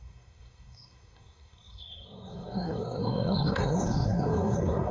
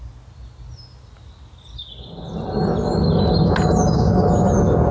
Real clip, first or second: second